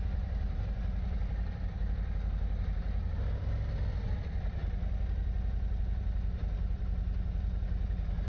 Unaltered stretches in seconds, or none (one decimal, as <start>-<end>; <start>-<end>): 4.6-5.8